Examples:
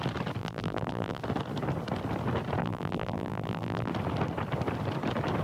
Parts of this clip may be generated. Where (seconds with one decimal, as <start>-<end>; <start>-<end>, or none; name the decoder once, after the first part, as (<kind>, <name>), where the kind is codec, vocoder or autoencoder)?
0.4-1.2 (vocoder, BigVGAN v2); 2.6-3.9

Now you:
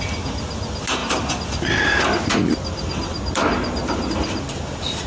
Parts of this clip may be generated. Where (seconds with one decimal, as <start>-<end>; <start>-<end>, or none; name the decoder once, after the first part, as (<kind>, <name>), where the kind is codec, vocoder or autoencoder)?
none

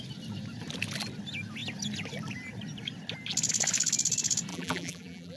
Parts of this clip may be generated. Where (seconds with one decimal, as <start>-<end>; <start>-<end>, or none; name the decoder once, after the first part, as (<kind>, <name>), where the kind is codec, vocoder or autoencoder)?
4.5-5.4 (vocoder, BigVGAN v2)

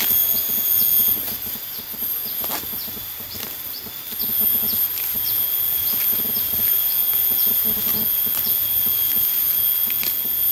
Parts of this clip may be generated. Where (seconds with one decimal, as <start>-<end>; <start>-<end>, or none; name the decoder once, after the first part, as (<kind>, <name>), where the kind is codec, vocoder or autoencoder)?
0.0-10.5 (vocoder, BigVGAN v2)

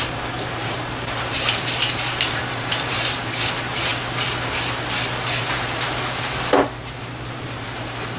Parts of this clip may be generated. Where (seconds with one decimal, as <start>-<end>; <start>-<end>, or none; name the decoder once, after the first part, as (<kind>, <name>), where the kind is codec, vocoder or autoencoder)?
0.0-3.9 (vocoder, BigVGAN v2); 5.5-8.2